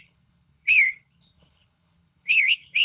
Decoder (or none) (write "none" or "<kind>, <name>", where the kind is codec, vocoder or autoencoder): codec, HILCodec